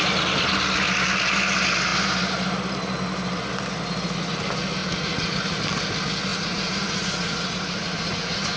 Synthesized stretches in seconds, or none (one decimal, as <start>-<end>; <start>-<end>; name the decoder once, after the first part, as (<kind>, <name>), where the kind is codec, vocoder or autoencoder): 4.8-5.3 (vocoder, Vocos); 6.3-8.6